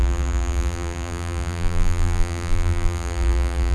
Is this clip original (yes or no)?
no